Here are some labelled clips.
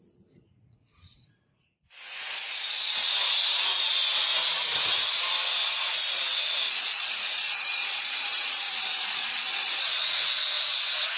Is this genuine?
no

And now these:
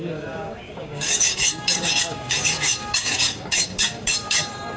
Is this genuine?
no